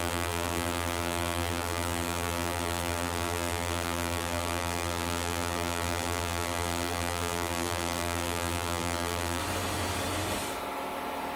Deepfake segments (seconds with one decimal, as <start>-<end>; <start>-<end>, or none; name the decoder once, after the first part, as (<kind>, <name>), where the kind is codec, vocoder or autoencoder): 0.0-9.4 (vocoder, BigVGAN v2)